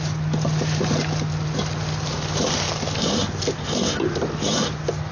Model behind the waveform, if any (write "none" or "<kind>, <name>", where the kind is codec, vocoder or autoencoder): none